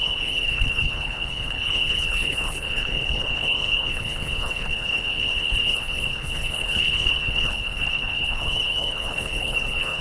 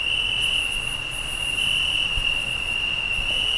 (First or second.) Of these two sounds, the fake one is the first